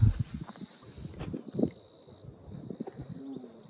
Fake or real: real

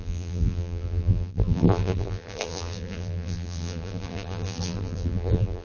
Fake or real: fake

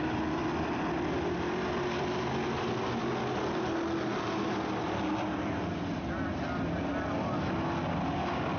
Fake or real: real